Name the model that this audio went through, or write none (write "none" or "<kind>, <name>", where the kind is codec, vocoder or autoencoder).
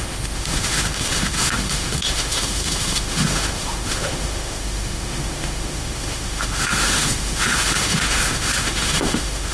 autoencoder, DAC-VAE